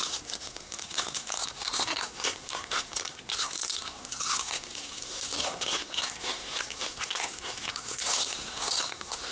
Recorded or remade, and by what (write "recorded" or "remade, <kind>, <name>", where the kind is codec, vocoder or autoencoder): remade, codec, SNAC